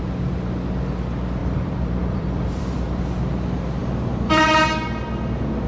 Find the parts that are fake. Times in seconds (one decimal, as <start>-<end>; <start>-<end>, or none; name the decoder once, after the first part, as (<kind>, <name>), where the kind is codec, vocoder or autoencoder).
1.4-3.0 (vocoder, BigVGAN v2)